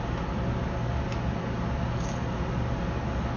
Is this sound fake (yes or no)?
no